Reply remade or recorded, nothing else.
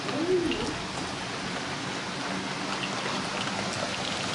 recorded